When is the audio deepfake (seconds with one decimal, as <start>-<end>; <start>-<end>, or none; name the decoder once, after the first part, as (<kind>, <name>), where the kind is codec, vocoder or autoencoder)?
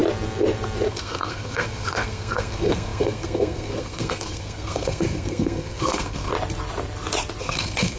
0.9-6.3 (codec, SNAC); 7.4-8.0